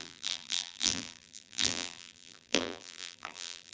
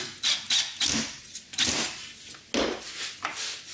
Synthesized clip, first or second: first